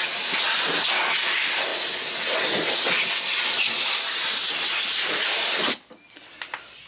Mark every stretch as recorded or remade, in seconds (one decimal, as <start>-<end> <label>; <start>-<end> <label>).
0.0-6.9 recorded